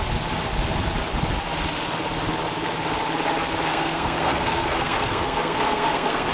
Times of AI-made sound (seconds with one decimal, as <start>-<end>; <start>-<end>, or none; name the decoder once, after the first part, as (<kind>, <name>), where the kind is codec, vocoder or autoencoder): 3.7-6.3 (codec, SNAC)